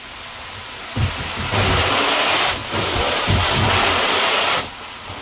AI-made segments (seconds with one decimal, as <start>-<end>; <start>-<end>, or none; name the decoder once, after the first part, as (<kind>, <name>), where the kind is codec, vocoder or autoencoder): none